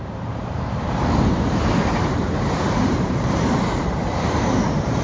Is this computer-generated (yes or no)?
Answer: yes